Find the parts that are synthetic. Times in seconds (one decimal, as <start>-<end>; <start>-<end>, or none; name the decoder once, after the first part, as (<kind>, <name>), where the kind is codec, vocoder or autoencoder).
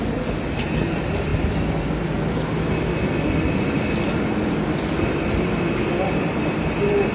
none